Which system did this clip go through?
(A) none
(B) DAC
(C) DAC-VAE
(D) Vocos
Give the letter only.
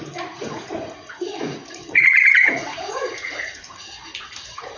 D